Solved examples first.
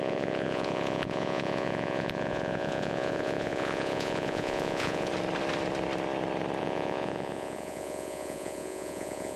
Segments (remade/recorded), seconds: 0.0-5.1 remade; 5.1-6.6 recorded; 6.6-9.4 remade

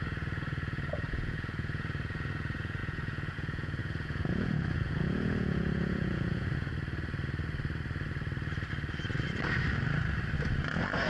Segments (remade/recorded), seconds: 0.0-6.7 remade; 6.7-10.6 recorded; 10.6-11.1 remade